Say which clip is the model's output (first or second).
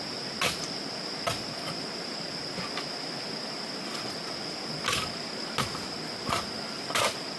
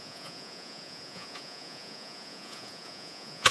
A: second